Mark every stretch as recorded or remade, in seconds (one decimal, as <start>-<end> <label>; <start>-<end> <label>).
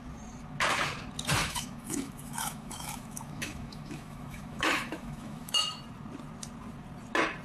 0.0-1.4 recorded; 1.4-5.8 remade; 5.8-7.4 recorded